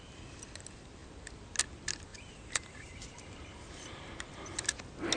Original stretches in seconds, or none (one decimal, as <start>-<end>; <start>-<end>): 0.0-2.1; 4.1-5.2